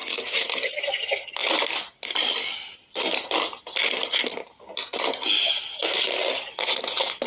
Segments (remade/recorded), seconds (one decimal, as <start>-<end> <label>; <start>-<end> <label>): 0.0-7.3 recorded